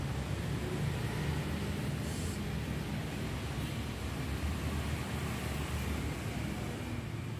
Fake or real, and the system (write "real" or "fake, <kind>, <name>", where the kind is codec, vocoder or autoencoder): real